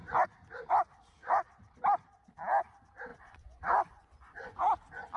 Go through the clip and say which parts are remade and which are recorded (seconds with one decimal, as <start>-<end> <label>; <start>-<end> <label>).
0.0-3.1 recorded; 3.1-4.6 remade; 4.6-5.2 recorded